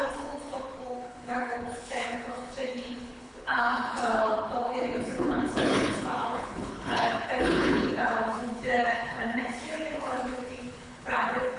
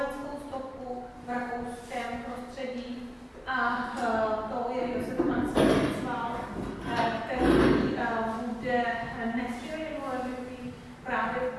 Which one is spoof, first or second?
first